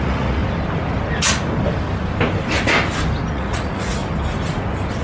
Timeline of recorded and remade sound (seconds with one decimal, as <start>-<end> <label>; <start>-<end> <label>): 0.0-0.4 remade; 0.4-3.3 recorded; 3.3-4.0 remade; 4.0-5.0 recorded